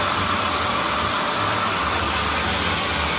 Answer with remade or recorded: remade